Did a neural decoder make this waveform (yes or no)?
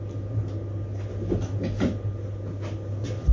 no